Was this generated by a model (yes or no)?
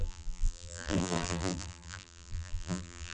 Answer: yes